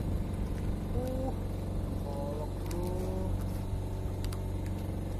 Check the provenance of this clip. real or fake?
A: real